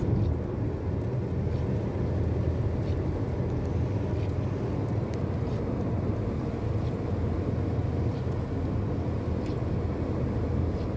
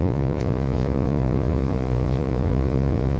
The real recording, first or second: first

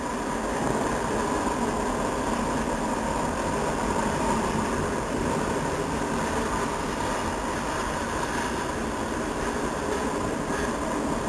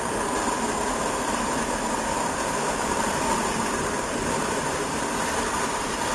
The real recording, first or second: first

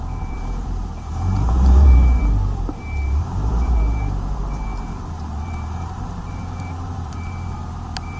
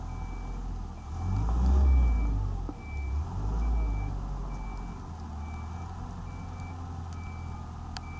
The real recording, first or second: second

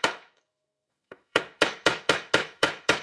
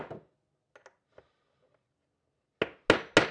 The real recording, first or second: second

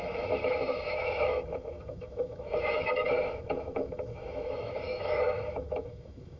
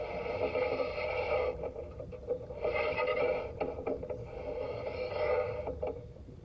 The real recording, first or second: second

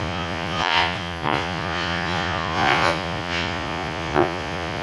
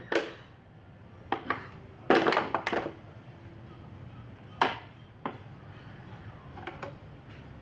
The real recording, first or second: second